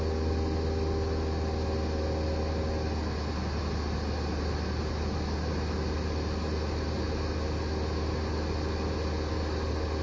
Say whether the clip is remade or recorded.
recorded